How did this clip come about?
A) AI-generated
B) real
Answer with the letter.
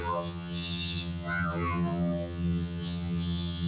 A